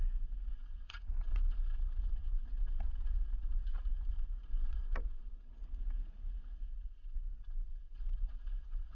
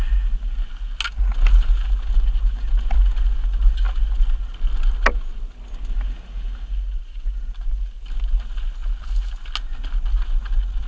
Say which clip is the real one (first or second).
second